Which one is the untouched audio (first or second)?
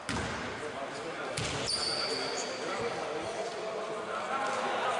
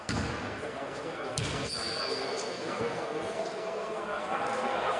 first